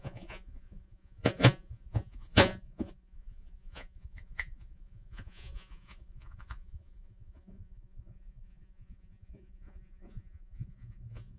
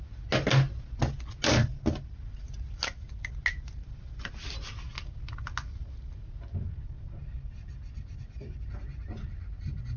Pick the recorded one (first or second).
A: second